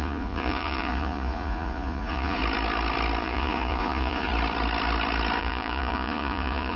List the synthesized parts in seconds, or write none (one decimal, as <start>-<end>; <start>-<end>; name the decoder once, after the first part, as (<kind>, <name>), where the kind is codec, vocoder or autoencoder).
0.0-2.4 (vocoder, Vocos); 3.2-4.3; 5.4-6.8